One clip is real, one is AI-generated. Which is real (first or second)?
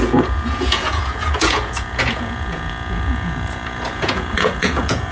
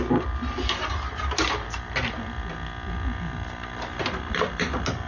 second